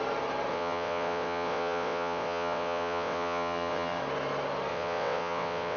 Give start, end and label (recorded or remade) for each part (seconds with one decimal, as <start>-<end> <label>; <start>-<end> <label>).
0.0-0.5 recorded; 0.5-4.0 remade; 4.0-4.7 recorded; 4.7-5.8 remade